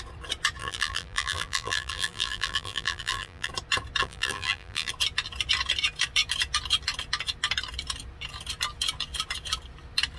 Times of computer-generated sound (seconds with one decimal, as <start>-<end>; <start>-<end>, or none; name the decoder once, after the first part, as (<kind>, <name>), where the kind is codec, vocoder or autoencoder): 0.6-3.5 (vocoder, BigVGAN v2); 4.0-4.9

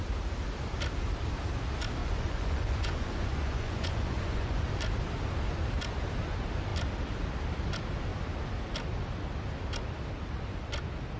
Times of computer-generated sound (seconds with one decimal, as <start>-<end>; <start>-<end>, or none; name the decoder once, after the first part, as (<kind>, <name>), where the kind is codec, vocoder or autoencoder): 2.0-4.7 (vocoder, Vocos)